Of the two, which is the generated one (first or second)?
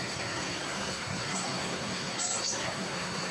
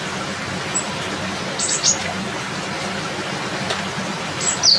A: first